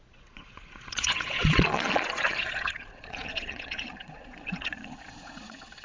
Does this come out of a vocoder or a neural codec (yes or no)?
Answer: yes